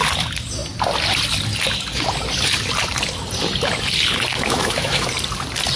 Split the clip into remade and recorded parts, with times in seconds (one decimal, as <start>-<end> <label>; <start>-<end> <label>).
0.0-4.3 recorded; 4.3-5.1 remade; 5.1-5.8 recorded